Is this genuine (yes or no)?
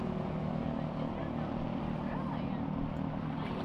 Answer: yes